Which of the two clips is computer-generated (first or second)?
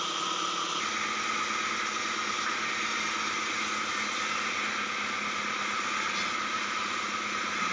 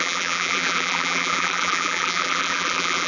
second